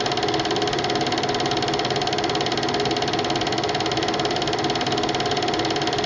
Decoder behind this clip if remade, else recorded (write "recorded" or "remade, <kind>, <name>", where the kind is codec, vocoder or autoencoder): recorded